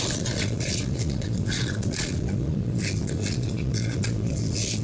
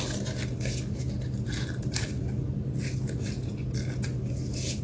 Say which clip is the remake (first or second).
first